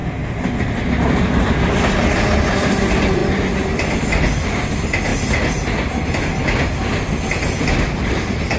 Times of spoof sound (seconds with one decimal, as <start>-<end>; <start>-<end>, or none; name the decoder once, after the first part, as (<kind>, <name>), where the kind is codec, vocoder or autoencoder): none